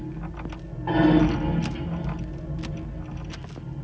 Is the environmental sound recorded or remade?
recorded